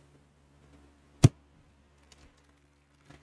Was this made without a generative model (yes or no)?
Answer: yes